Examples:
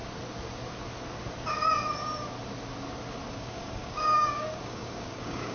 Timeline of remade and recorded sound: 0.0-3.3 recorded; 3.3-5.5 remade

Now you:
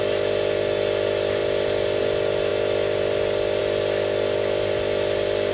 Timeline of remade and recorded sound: 0.0-5.5 recorded

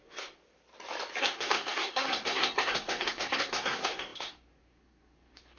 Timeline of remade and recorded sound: 0.0-0.4 remade; 0.4-1.2 recorded; 1.2-5.6 remade

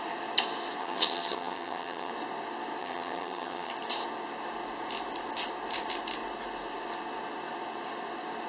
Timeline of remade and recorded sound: 0.0-0.8 recorded; 0.8-2.1 remade; 2.1-2.8 recorded; 2.8-3.7 remade; 3.7-8.5 recorded

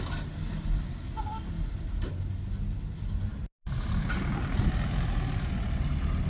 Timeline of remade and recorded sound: 0.0-6.3 recorded

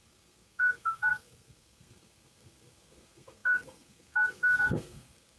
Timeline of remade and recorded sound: 0.0-5.4 remade

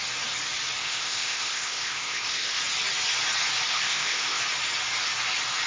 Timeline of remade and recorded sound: 0.0-0.8 recorded; 0.8-2.6 remade; 2.6-3.7 recorded; 3.7-4.4 remade; 4.4-5.7 recorded

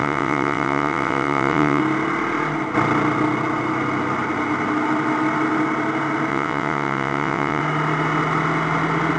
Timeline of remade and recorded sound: 0.0-1.8 remade; 1.8-6.3 recorded; 6.3-7.6 remade; 7.6-9.2 recorded